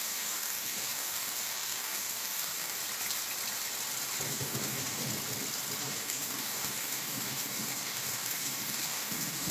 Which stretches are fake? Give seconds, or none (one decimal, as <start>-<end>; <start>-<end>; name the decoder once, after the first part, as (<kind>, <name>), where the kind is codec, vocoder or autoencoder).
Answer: 0.0-2.8 (codec, DAC); 4.3-5.1; 5.8-9.5